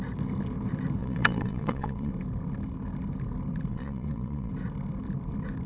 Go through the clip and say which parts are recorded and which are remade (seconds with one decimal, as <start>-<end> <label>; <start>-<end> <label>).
0.0-1.0 recorded; 1.0-2.1 remade; 2.1-3.7 recorded; 3.7-4.5 remade; 4.5-5.7 recorded